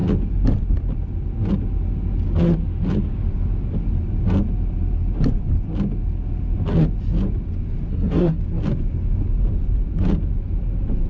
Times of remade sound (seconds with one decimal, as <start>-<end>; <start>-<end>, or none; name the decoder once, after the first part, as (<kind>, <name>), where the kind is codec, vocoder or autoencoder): 7.9-8.4 (codec, SNAC)